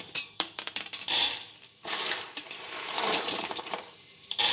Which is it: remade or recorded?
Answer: remade